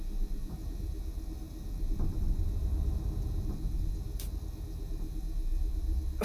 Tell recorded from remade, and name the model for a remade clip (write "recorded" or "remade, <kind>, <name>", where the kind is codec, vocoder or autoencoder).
recorded